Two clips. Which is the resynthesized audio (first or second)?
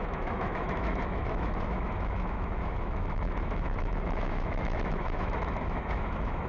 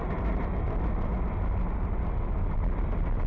first